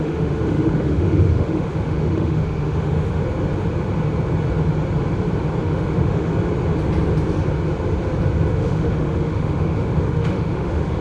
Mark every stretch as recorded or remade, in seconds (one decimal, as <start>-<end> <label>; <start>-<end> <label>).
0.0-3.2 remade; 3.2-5.6 recorded; 5.6-6.3 remade; 6.3-8.5 recorded; 8.5-11.0 remade